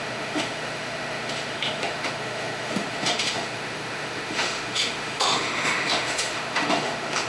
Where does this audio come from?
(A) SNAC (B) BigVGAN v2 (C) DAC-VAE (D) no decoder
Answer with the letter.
C